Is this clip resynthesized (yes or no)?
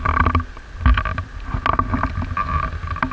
no